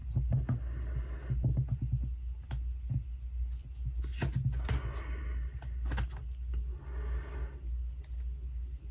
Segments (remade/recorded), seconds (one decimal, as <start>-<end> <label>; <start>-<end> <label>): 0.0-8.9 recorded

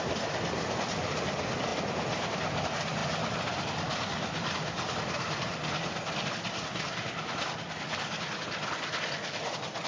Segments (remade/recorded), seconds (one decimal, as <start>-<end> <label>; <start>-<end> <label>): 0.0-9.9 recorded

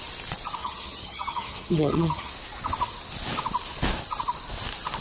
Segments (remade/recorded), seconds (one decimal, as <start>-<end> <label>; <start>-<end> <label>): 0.0-0.6 recorded; 0.6-2.3 remade; 2.3-5.0 recorded

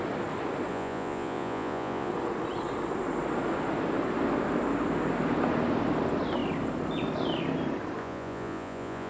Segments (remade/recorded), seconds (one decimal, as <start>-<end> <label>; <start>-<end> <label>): 0.0-0.7 recorded; 0.7-2.1 remade; 2.1-8.0 recorded; 8.0-9.1 remade